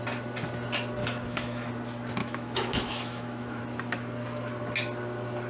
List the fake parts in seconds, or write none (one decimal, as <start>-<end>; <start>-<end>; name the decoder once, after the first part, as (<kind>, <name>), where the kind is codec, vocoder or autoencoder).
1.0-1.7 (autoencoder, DAC-VAE); 2.2-3.6